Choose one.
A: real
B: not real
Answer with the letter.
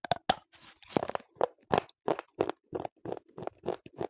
A